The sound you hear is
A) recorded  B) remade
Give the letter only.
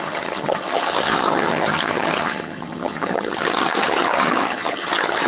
B